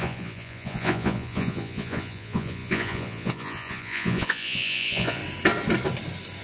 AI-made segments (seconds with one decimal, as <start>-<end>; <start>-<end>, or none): 0.0-5.2